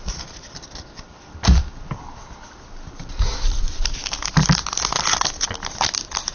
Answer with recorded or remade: recorded